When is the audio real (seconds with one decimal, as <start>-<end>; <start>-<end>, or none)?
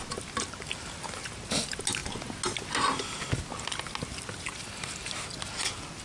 0.0-6.0